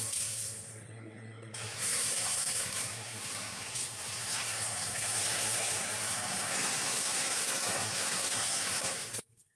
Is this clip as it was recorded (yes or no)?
no